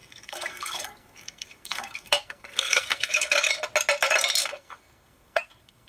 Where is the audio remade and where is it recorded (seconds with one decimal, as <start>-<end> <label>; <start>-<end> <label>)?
0.0-3.5 remade; 3.5-4.4 recorded; 4.4-5.9 remade